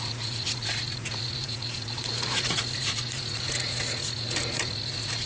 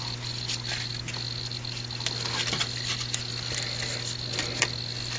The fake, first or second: first